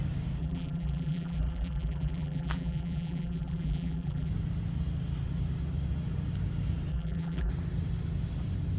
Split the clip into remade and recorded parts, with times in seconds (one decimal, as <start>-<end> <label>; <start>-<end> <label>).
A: 0.0-0.4 recorded; 0.4-4.3 remade; 4.3-6.9 recorded; 6.9-7.5 remade; 7.5-8.8 recorded